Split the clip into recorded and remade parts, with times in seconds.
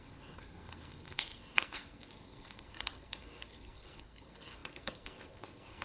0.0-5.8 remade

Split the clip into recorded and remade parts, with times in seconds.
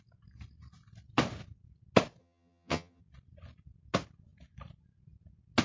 0.0-2.2 recorded; 2.2-3.0 remade; 3.0-5.6 recorded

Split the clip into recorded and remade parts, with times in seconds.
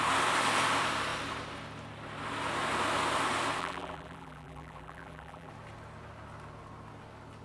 0.0-3.6 recorded; 3.6-5.5 remade; 5.5-7.4 recorded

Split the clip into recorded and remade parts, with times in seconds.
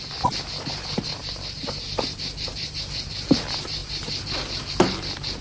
0.0-5.4 remade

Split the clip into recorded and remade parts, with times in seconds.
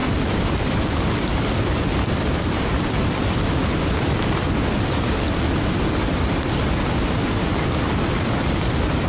0.0-4.1 remade; 4.1-9.1 recorded